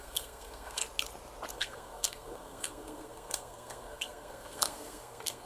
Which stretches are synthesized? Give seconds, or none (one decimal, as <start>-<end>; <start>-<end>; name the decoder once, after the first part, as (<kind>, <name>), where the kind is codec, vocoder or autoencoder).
0.0-0.8 (codec, SNAC); 1.5-5.5